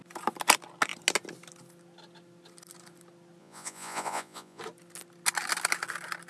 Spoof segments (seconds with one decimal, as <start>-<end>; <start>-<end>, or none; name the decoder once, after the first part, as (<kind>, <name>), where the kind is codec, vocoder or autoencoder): 3.4-4.6 (vocoder, Vocos)